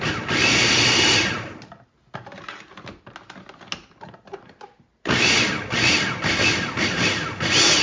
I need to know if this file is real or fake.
real